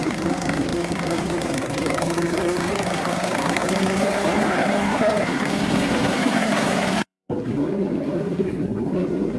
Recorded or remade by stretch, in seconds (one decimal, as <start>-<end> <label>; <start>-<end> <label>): 0.0-9.4 remade